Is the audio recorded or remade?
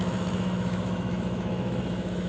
remade